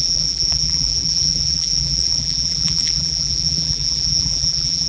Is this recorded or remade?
remade